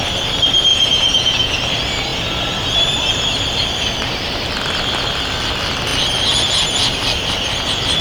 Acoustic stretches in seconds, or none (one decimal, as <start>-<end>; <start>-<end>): 0.0-0.7; 1.5-8.0